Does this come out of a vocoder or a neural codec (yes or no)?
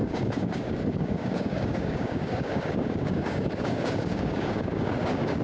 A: yes